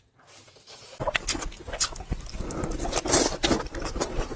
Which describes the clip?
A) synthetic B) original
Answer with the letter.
B